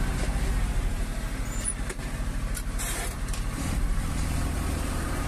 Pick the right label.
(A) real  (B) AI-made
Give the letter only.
B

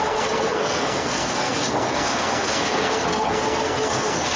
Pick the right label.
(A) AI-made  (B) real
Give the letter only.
A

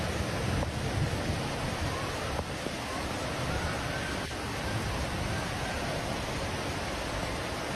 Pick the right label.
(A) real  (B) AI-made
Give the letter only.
A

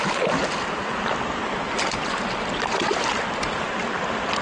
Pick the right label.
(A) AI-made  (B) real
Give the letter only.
B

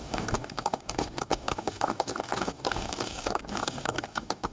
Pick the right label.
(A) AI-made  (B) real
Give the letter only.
A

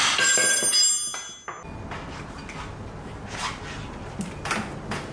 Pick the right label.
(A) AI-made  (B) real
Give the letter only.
B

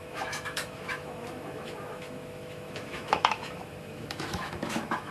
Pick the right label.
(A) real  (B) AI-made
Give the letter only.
B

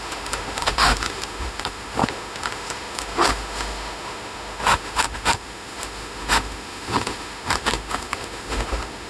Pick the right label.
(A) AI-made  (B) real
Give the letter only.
A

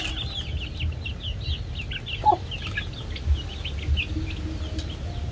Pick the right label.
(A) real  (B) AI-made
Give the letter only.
A